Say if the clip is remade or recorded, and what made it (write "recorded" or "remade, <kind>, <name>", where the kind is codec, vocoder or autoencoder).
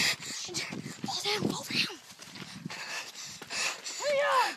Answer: recorded